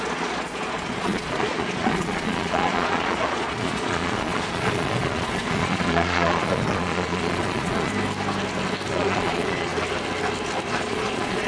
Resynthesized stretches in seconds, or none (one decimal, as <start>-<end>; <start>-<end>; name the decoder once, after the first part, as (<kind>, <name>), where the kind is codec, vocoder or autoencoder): 0.0-7.9 (vocoder, Vocos); 8.9-9.7; 10.7-11.5